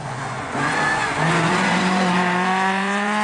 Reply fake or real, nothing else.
fake